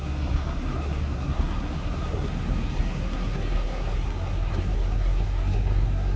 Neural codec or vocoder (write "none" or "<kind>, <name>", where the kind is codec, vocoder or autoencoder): codec, SNAC